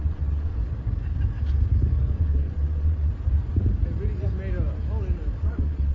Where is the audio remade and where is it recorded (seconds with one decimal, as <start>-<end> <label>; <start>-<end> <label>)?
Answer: 0.0-0.6 remade; 0.6-2.2 recorded; 2.2-3.1 remade; 3.1-5.4 recorded; 5.4-5.9 remade